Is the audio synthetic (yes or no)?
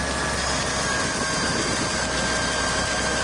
no